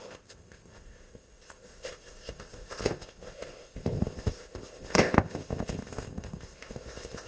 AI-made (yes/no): yes